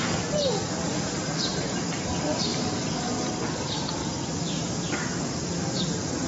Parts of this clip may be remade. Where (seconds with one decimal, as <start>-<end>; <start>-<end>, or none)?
1.5-2.1; 2.5-3.1; 4.0-4.7